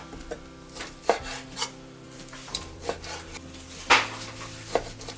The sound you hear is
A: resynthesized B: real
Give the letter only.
A